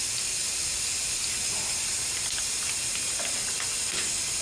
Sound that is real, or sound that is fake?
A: real